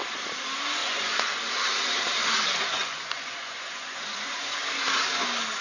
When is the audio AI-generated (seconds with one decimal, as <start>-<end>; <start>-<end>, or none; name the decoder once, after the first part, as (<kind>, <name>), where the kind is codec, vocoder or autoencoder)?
0.8-1.4 (vocoder, Vocos); 2.8-4.6